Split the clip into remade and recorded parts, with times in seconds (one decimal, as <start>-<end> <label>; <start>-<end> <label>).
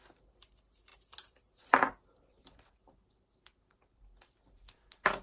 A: 0.0-5.2 recorded